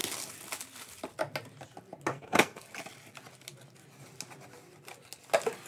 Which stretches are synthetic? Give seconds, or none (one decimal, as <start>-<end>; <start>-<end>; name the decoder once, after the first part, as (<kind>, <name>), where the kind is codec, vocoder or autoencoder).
2.1-2.7 (codec, SNAC)